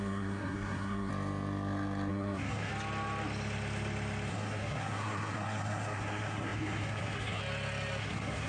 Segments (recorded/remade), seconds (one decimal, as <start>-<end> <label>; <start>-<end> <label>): 0.0-1.1 remade; 1.1-2.1 recorded; 2.1-2.7 remade; 2.7-4.3 recorded; 4.3-7.4 remade; 7.4-8.0 recorded; 8.0-8.5 remade